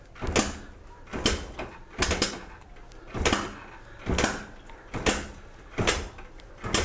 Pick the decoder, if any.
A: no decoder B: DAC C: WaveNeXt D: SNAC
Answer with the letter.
A